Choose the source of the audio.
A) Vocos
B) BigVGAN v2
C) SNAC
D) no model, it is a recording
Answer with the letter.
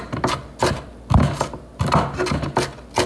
D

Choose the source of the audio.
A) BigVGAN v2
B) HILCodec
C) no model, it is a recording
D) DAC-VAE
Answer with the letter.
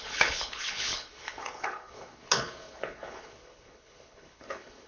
B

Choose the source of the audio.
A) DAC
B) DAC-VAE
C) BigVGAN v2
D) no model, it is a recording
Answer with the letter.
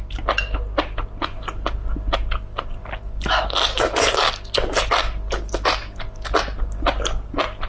D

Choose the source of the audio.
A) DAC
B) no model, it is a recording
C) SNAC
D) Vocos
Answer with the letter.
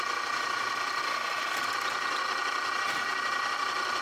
B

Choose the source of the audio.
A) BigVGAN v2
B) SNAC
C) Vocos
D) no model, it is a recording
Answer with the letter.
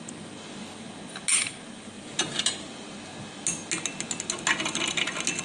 D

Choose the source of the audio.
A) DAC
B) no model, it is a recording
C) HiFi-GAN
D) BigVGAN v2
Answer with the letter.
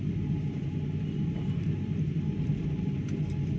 B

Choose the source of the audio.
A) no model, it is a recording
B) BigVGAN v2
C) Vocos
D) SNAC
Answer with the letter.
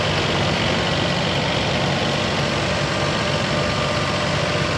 A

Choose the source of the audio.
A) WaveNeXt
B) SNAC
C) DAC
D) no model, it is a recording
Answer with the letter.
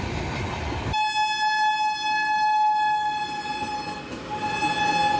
D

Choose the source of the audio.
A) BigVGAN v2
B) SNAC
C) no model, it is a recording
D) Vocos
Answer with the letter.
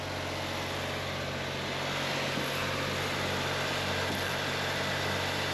C